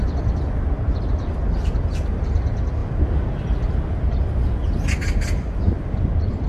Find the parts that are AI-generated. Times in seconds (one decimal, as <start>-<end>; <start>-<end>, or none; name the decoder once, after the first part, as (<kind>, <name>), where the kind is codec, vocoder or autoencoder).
none

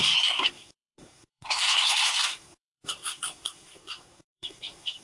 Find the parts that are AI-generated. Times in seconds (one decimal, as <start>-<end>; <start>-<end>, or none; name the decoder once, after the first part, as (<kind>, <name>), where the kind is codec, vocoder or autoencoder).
0.0-5.0 (codec, SNAC)

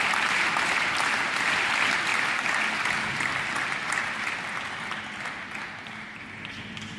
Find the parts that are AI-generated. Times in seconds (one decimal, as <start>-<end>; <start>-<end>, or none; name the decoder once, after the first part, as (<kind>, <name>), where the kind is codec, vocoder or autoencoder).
none

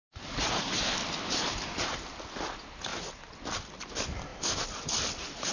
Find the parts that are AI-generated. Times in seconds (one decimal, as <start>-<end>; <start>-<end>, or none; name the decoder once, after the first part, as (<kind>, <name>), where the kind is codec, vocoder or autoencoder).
none

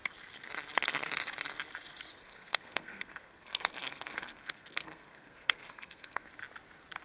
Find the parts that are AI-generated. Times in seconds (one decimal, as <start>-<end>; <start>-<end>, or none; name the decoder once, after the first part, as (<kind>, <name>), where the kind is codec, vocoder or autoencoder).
2.1-6.3 (codec, SNAC)